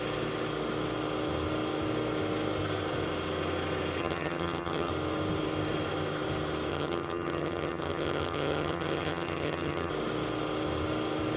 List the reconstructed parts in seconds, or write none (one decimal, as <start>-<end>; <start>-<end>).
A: 4.0-4.9; 6.7-9.9